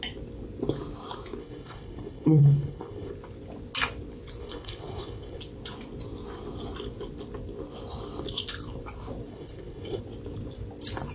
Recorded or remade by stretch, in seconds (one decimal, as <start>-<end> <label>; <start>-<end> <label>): 0.0-1.4 recorded; 1.4-3.1 remade; 3.1-4.4 recorded; 4.4-5.4 remade; 5.4-9.3 recorded; 9.3-10.0 remade; 10.0-11.1 recorded